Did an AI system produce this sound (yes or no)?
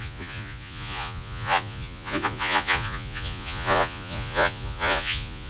yes